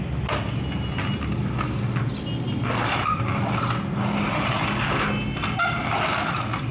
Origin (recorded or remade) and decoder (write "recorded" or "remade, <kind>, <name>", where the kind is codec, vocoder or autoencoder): recorded